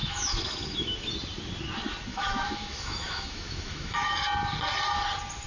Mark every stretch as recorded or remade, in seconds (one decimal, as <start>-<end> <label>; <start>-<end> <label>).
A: 0.0-1.1 remade; 1.1-2.1 recorded; 2.1-4.1 remade; 4.1-5.5 recorded

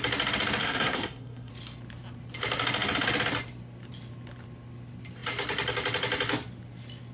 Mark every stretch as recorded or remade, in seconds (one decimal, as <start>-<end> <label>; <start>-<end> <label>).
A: 0.0-0.6 recorded; 0.6-1.5 remade; 1.5-7.1 recorded

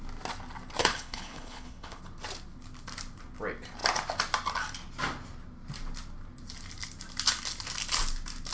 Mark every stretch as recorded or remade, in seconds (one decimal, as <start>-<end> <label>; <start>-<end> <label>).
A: 0.0-0.8 recorded; 0.8-2.0 remade; 2.0-8.5 recorded